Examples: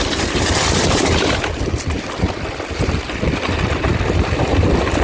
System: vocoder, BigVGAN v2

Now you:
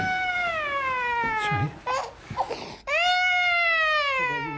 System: none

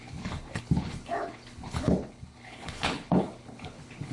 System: codec, HILCodec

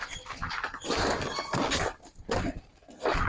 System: none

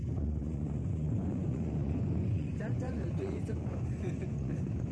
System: vocoder, Vocos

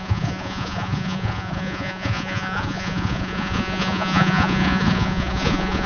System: vocoder, Vocos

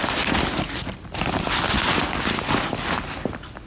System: none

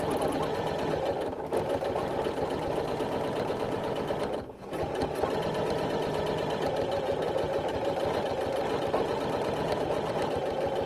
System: vocoder, BigVGAN v2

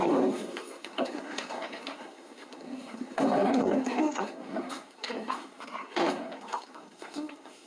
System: codec, SNAC